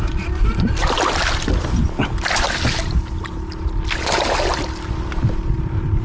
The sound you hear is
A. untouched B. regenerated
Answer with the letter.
A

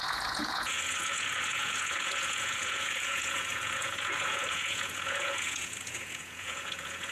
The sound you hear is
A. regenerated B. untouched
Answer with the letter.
A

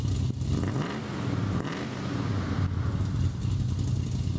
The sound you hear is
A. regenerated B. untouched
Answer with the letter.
B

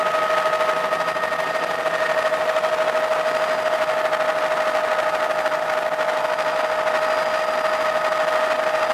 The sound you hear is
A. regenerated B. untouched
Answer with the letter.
B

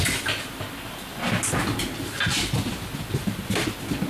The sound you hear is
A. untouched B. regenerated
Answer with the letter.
A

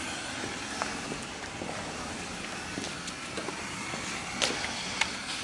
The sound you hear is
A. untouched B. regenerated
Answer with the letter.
A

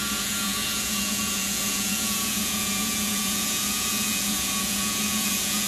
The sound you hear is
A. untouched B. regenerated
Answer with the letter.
B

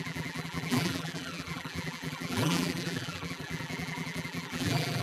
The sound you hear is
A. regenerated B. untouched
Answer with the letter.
A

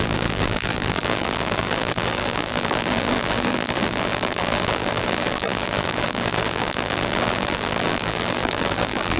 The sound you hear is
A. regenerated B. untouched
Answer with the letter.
A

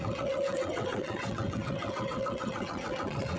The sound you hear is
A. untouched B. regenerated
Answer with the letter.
B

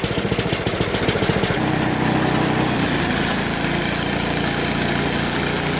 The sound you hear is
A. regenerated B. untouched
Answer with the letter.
B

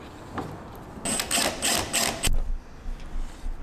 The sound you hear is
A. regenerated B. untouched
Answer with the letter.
B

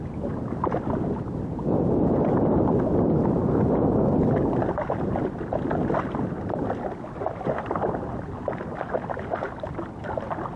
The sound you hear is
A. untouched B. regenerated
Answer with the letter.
A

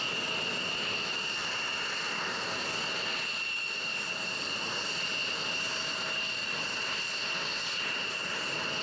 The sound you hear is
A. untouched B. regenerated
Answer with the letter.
A